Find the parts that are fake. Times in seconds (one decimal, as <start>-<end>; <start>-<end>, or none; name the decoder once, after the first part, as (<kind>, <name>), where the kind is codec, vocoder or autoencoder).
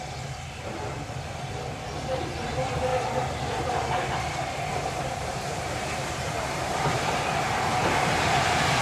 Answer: 2.9-7.2 (vocoder, BigVGAN v2)